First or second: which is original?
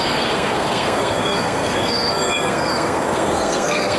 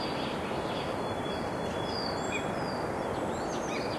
second